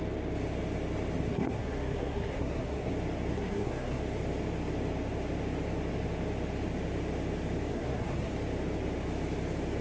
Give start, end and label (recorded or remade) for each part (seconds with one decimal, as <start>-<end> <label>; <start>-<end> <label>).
0.0-1.3 recorded; 1.3-2.9 remade; 2.9-3.3 recorded; 3.3-4.0 remade; 4.0-7.7 recorded; 7.7-8.3 remade; 8.3-9.8 recorded